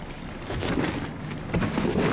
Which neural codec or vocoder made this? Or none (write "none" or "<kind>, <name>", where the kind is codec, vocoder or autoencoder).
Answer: none